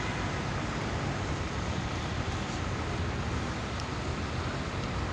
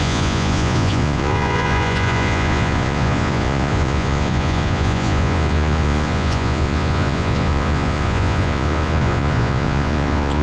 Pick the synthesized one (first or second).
second